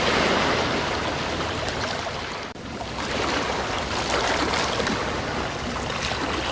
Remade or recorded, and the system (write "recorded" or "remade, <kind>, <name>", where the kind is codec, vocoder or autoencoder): recorded